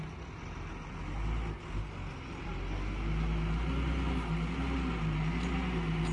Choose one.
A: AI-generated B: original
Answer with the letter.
B